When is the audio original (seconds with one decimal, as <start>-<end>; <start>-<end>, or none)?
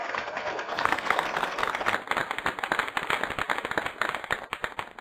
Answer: 1.7-5.0